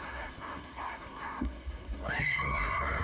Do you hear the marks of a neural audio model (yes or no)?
yes